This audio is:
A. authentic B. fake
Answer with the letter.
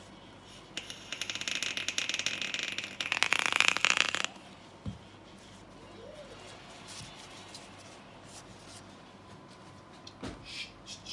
A